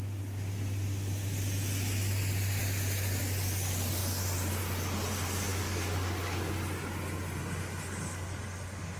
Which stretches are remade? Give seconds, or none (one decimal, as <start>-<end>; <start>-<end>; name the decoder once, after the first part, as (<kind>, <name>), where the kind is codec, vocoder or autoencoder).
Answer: 5.5-6.5 (codec, DAC)